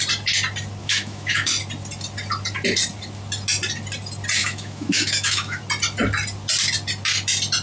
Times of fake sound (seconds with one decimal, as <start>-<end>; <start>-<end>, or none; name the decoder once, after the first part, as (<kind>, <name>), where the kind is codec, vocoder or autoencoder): 0.8-1.5 (autoencoder, DAC-VAE); 4.4-5.6